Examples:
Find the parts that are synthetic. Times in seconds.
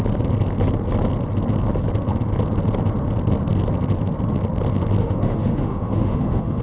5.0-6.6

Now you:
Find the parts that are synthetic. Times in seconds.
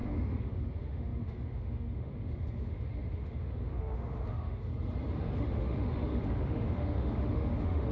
0.0-4.7; 5.2-7.9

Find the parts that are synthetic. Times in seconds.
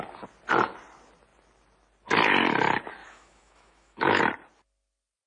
3.0-4.2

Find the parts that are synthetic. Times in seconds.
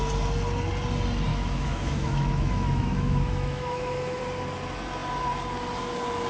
1.3-4.2